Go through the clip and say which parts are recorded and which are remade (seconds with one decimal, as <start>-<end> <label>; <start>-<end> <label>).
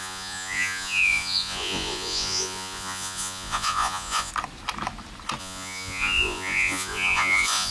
0.0-4.3 remade; 4.3-5.4 recorded; 5.4-7.7 remade